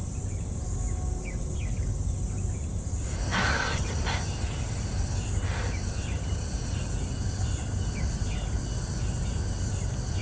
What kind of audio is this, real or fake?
real